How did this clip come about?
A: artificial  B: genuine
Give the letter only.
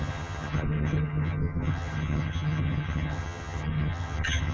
A